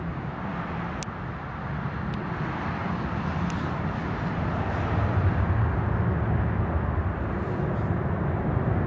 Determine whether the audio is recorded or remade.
recorded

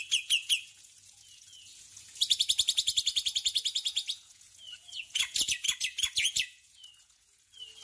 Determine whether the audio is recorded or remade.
remade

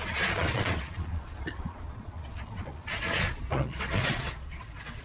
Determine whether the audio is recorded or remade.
remade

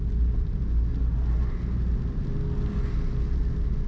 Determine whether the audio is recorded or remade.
recorded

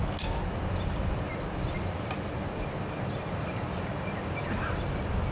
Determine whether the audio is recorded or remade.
recorded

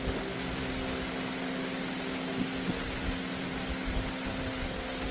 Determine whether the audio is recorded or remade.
recorded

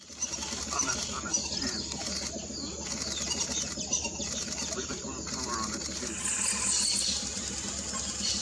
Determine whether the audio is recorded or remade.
recorded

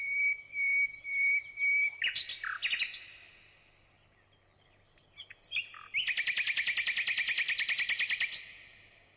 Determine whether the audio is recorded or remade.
recorded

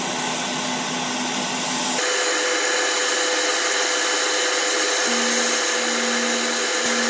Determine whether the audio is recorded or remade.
recorded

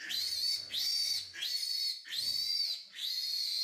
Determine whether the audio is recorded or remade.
recorded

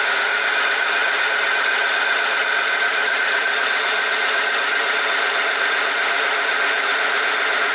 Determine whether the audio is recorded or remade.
remade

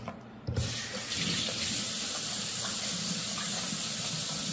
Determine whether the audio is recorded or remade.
recorded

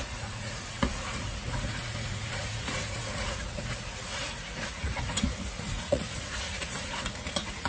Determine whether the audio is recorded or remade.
remade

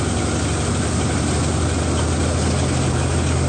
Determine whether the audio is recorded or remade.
recorded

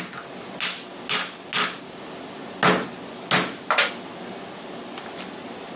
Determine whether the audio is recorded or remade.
recorded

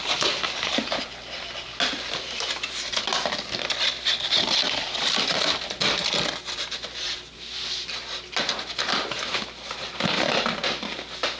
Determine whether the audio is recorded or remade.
recorded